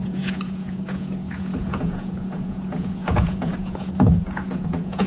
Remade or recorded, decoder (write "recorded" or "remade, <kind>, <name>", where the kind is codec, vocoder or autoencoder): remade, vocoder, Vocos